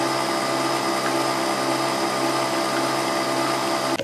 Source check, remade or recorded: recorded